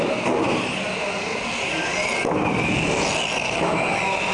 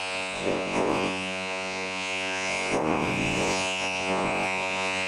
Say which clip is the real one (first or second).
first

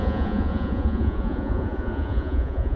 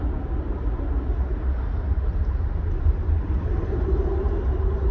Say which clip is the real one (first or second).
second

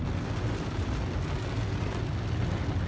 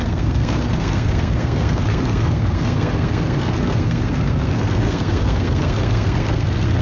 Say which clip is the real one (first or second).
first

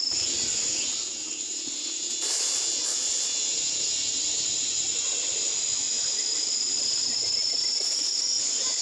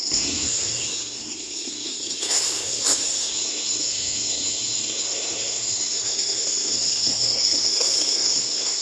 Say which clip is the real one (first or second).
first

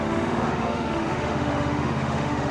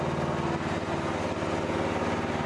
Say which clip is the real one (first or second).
second